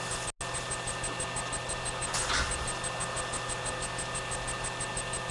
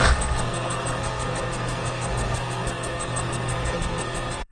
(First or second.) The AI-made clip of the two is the second